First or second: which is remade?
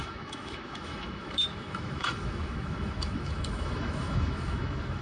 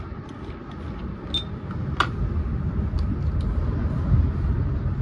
first